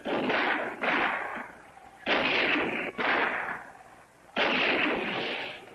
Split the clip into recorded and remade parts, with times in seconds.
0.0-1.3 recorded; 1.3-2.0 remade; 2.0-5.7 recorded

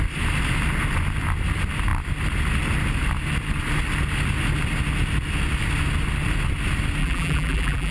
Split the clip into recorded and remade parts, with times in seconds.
0.0-7.0 recorded; 7.0-7.9 remade